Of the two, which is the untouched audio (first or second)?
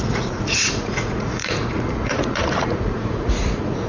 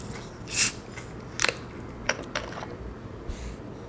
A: second